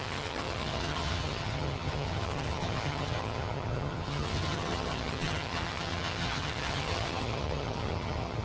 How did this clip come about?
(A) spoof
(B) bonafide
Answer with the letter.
A